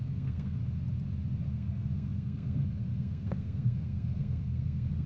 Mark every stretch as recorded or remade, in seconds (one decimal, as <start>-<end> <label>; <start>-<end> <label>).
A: 0.0-0.6 remade; 0.6-1.5 recorded; 1.5-5.1 remade